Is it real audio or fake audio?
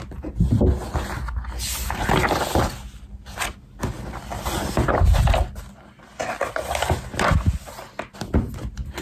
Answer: real